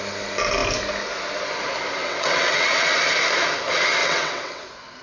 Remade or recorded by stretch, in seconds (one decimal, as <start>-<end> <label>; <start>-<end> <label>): 0.0-2.0 recorded; 2.0-2.9 remade; 2.9-4.0 recorded; 4.0-4.6 remade; 4.6-5.0 recorded